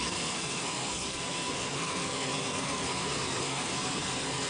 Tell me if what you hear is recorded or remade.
remade